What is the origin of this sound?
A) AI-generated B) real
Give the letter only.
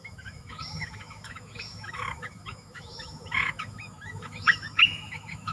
A